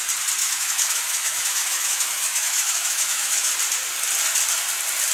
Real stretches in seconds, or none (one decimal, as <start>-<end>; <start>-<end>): 0.0-0.4; 3.5-5.1